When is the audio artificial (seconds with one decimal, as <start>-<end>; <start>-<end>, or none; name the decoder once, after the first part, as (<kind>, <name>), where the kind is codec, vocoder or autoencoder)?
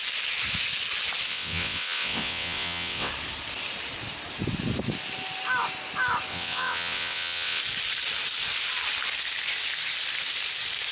1.3-3.1 (vocoder, WaveNeXt); 6.3-7.6